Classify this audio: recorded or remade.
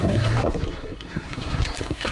remade